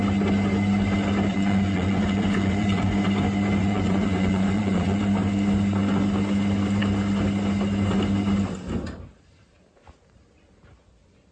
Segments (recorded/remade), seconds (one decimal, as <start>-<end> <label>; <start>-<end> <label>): 0.0-1.3 recorded; 1.3-2.9 remade; 2.9-3.6 recorded; 3.6-5.0 remade; 5.0-11.3 recorded